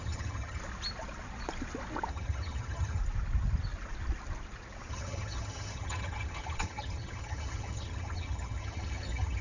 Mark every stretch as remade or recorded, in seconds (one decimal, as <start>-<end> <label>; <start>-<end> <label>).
0.0-0.6 remade; 0.6-2.1 recorded; 2.1-3.0 remade; 3.0-4.9 recorded; 4.9-9.4 remade